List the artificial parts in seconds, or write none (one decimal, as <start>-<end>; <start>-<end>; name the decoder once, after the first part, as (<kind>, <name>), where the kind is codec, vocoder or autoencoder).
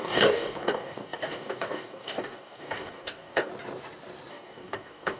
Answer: 0.0-3.5 (codec, DAC); 4.3-5.2